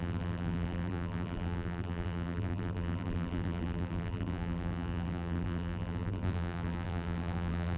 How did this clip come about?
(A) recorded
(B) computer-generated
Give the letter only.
B